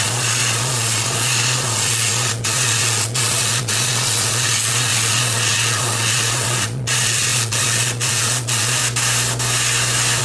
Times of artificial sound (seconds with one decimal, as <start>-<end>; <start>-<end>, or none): 0.0-8.8